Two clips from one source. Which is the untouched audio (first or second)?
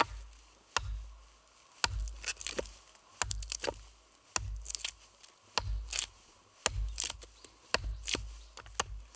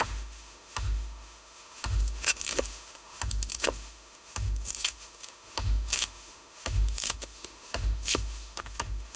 first